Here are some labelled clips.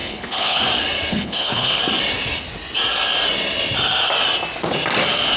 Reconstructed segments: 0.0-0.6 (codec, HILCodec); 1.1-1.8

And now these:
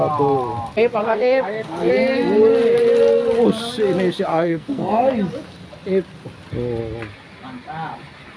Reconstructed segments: 1.0-1.9 (codec, SNAC); 4.3-5.1

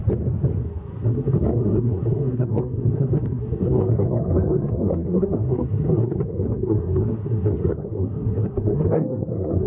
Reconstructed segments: 0.6-9.7 (codec, SNAC)

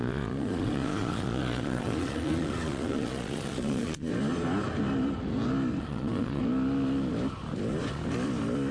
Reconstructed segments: 0.0-4.1 (vocoder, Vocos); 5.8-6.4

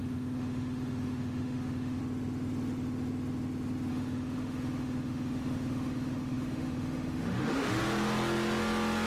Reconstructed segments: 0.0-2.0 (autoencoder, DAC-VAE); 3.9-7.8

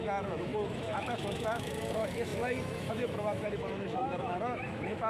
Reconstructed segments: 0.0-5.1 (autoencoder, DAC-VAE)

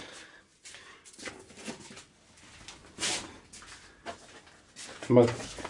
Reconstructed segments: none